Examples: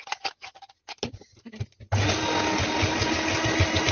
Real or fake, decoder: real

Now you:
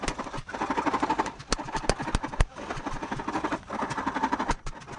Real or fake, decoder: real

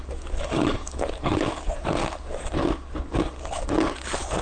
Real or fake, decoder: fake, codec, DAC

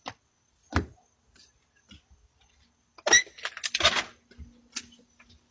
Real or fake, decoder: real